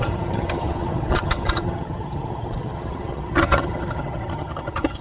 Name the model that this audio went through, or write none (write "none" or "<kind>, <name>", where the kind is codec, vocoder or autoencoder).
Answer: vocoder, HiFi-GAN